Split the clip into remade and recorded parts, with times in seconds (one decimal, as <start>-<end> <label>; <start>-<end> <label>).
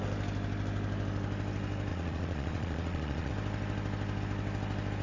0.0-1.9 recorded; 1.9-3.3 remade; 3.3-5.0 recorded